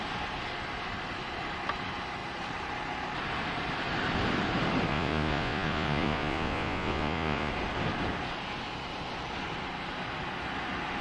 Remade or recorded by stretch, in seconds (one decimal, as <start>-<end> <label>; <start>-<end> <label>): 0.0-4.9 recorded; 4.9-7.5 remade; 7.5-11.0 recorded